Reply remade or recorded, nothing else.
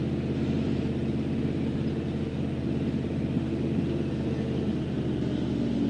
recorded